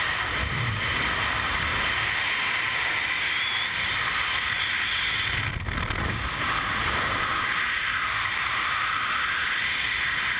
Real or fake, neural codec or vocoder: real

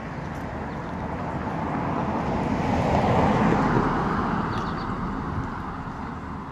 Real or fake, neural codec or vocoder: real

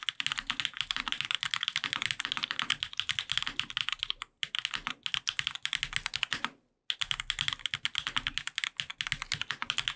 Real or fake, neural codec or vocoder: real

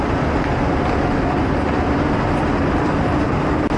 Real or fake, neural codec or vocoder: real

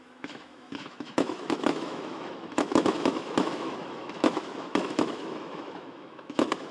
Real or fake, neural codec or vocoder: fake, autoencoder, DAC-VAE